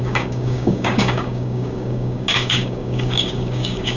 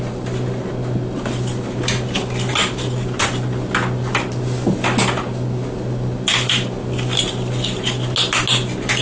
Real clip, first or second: second